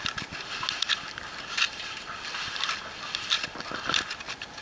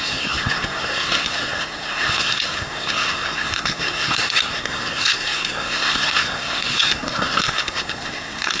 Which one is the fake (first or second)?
second